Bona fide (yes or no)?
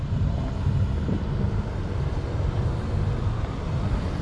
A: yes